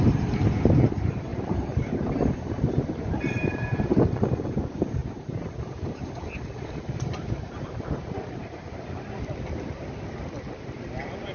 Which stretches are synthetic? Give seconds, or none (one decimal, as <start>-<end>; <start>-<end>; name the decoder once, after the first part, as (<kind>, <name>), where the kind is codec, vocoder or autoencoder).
1.3-4.0 (vocoder, BigVGAN v2); 5.0-8.8